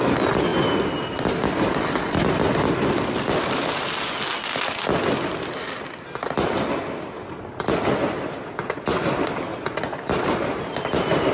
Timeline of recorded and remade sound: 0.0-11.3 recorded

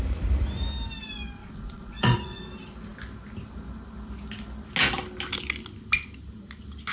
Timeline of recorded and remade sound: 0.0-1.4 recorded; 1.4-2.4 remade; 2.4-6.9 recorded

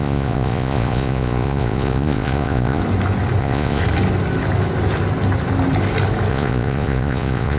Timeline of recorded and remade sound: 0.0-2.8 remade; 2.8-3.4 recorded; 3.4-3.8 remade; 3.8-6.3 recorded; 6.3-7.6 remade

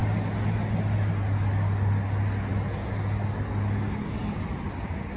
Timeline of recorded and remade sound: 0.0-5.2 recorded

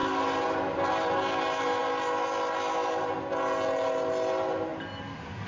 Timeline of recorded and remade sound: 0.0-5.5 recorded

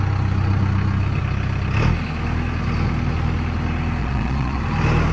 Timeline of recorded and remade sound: 0.0-4.0 recorded; 4.0-4.6 remade; 4.6-5.1 recorded

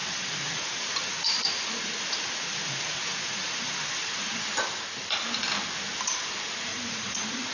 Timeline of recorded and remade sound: 0.0-4.4 remade; 4.4-6.7 recorded; 6.7-7.5 remade

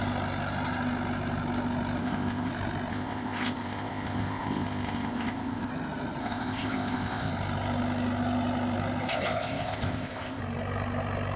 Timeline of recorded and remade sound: 0.0-2.0 recorded; 2.0-2.5 remade; 2.5-2.9 recorded; 2.9-5.7 remade; 5.7-6.2 recorded; 6.2-7.3 remade; 7.3-9.1 recorded; 9.1-10.4 remade; 10.4-11.4 recorded